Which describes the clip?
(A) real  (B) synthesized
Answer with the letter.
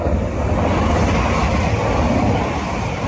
A